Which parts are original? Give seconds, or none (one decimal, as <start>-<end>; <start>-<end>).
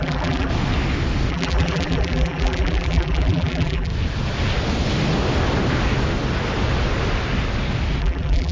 0.5-1.3; 3.9-8.0